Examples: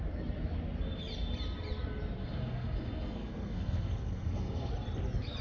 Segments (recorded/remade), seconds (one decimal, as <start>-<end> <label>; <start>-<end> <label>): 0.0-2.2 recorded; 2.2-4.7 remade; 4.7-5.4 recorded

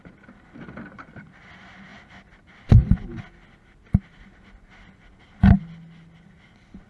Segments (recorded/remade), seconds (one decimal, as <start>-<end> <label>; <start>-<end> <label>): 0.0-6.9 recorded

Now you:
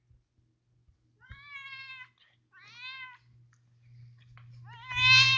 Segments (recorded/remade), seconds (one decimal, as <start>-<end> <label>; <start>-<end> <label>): 0.0-5.4 recorded

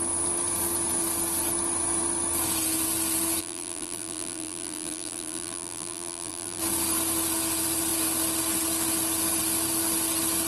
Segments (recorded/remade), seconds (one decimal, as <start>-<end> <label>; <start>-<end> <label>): 0.0-3.4 recorded; 3.4-6.6 remade; 6.6-10.5 recorded